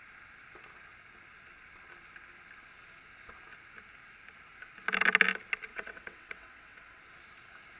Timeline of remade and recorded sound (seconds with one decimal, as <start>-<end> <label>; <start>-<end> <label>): 0.0-5.7 recorded; 5.7-7.0 remade; 7.0-7.8 recorded